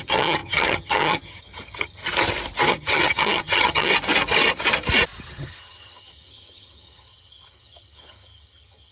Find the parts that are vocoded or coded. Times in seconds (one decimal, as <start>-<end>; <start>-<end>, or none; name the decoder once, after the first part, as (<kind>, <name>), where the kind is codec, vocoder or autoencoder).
0.0-2.0 (vocoder, HiFi-GAN); 2.7-3.9; 5.2-8.9